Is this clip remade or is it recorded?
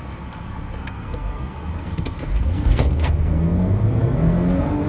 remade